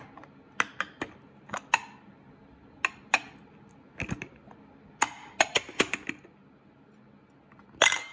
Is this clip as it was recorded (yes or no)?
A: yes